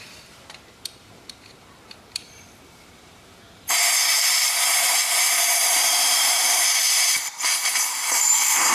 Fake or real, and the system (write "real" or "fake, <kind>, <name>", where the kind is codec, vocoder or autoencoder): fake, vocoder, BigVGAN v2